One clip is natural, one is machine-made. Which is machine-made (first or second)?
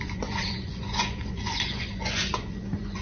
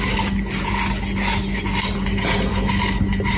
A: first